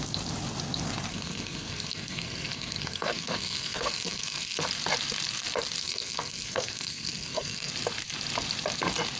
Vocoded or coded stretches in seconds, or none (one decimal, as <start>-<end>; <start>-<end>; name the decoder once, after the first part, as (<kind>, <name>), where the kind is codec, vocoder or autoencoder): 1.1-4.6 (codec, SNAC); 5.8-7.7